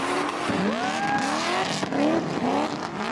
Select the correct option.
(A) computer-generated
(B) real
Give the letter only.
B